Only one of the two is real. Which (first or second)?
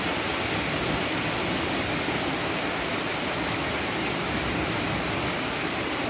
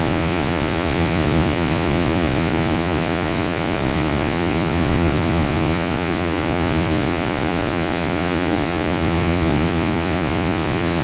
first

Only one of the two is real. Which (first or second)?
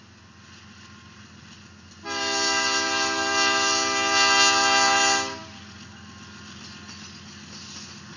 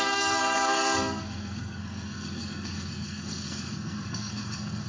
first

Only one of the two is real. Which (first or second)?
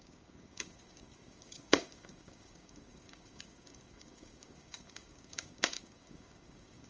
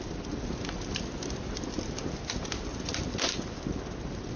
second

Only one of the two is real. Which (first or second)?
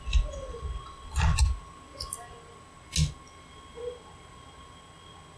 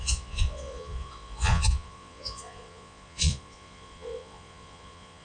first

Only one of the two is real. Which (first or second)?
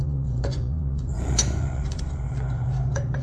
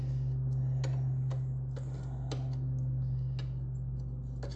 second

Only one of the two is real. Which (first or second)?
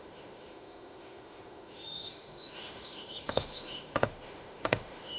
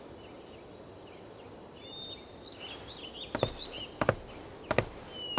second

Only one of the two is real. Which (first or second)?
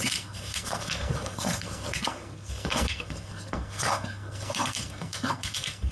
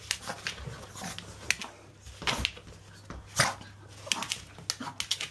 second